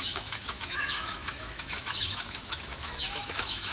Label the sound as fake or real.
fake